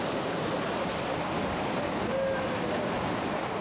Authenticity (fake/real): real